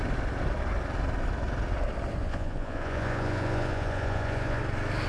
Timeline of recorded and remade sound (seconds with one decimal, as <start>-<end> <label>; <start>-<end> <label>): 0.0-2.2 recorded; 2.2-4.6 remade; 4.6-5.1 recorded